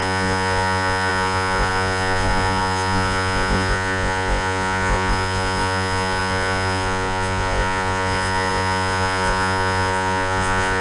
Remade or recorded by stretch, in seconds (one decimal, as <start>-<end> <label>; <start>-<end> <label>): 0.0-10.8 remade